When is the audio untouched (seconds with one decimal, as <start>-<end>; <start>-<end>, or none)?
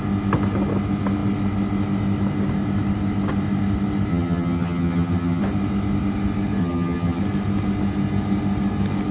0.0-4.1; 5.4-6.6; 7.2-9.1